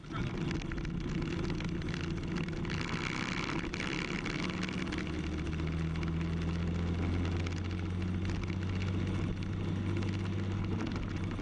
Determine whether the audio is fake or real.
real